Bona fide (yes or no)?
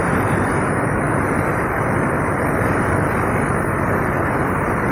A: no